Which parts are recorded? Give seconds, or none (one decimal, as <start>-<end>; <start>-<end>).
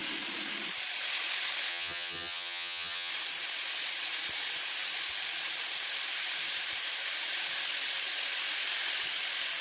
0.0-1.7; 3.1-9.6